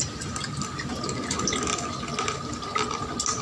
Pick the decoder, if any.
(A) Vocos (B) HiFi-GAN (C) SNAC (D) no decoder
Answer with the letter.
D